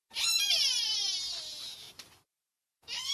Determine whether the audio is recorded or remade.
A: recorded